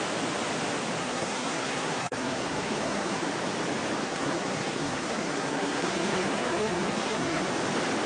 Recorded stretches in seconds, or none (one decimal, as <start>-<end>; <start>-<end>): 0.0-1.0; 3.3-4.0; 7.5-8.1